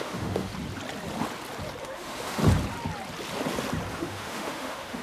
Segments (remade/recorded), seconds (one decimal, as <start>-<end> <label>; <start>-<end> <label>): 0.0-0.5 remade; 0.5-1.8 recorded; 1.8-2.4 remade; 2.4-3.9 recorded; 3.9-5.0 remade